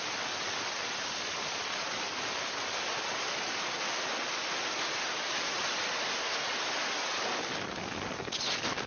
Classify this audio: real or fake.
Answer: real